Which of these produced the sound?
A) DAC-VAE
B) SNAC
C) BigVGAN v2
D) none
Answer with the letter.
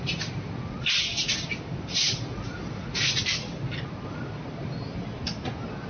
D